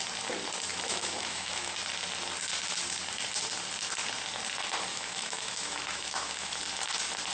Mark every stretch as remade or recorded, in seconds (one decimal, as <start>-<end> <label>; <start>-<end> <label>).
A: 0.0-0.7 recorded; 0.7-1.7 remade; 1.7-4.9 recorded; 4.9-6.6 remade; 6.6-7.3 recorded